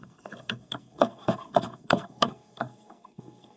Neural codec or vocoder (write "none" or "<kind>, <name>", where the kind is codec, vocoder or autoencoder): codec, SNAC